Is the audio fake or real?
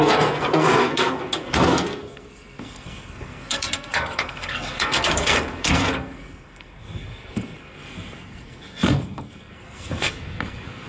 fake